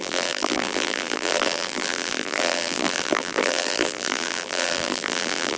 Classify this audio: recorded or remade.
remade